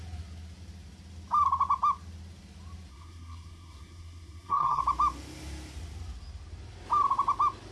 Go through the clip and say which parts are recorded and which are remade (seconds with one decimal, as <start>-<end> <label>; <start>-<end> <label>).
0.0-2.9 recorded; 2.9-4.8 remade; 4.8-7.7 recorded